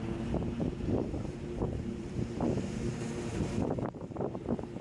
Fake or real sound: fake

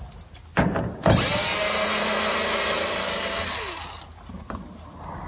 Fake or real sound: real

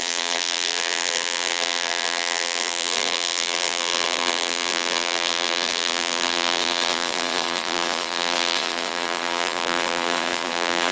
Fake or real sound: fake